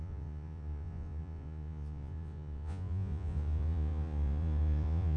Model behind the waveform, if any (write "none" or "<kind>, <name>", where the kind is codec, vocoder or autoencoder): vocoder, Vocos